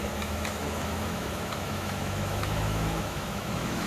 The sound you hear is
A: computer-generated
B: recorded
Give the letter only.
A